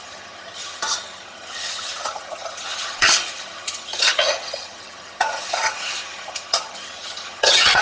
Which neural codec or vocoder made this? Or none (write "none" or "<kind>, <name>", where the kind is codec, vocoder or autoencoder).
vocoder, HiFi-GAN